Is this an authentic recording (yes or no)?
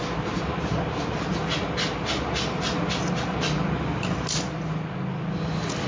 yes